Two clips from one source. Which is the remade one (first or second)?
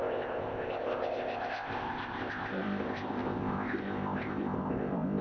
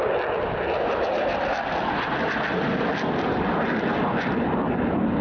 first